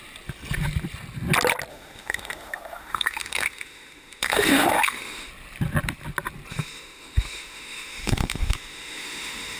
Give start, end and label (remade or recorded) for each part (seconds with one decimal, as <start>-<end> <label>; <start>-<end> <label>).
0.0-1.7 recorded; 1.7-5.3 remade; 5.3-6.5 recorded; 6.5-9.6 remade